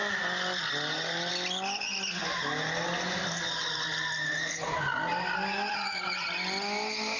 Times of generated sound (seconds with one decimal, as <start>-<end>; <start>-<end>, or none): none